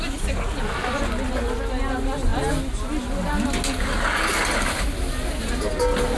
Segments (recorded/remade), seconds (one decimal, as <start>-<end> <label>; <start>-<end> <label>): 0.0-6.2 recorded